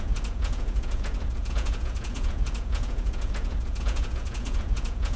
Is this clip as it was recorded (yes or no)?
no